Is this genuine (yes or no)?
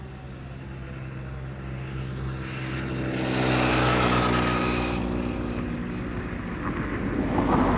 yes